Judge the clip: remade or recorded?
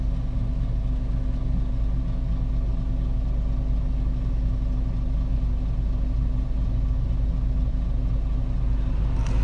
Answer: recorded